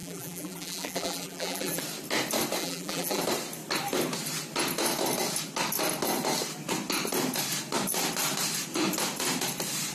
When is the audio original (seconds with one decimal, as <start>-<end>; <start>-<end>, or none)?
1.8-2.6; 3.2-9.9